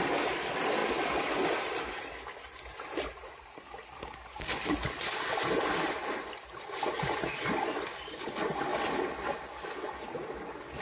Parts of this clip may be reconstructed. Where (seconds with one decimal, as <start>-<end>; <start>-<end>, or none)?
none